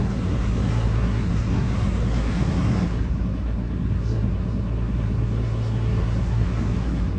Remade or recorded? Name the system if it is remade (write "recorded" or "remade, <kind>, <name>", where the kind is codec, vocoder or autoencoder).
remade, codec, SNAC